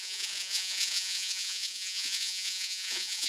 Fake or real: fake